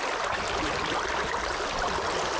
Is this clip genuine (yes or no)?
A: yes